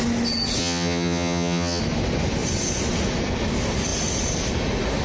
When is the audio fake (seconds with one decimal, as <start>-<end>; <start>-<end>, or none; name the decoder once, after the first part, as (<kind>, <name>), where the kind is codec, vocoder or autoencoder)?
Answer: 0.6-1.8 (vocoder, HiFi-GAN)